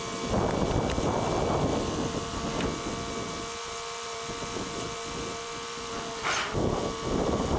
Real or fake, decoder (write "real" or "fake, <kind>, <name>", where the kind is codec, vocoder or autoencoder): real